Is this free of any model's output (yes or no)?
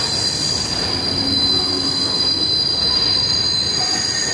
yes